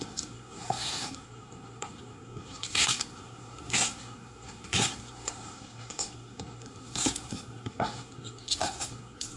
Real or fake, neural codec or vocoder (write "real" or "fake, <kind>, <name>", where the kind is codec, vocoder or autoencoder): fake, codec, SNAC